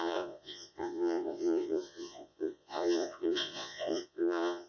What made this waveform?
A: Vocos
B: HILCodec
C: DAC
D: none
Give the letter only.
A